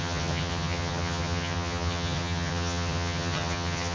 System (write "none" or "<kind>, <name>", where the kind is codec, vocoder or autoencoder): vocoder, HiFi-GAN